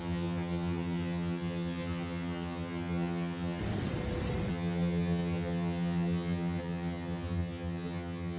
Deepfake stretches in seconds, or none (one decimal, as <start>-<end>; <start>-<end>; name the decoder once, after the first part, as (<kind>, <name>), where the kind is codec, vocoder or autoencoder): 0.0-3.6 (vocoder, HiFi-GAN); 4.5-8.4